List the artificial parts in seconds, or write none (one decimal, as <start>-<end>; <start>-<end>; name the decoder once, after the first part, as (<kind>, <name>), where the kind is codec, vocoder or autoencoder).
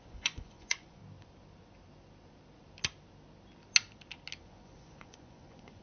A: 0.0-1.0 (vocoder, Vocos); 4.4-5.8